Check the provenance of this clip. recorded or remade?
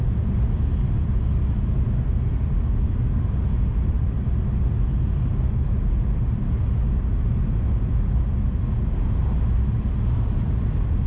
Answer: recorded